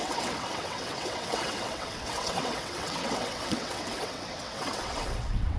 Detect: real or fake fake